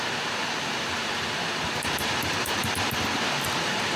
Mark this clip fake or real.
fake